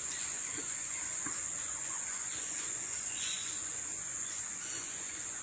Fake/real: fake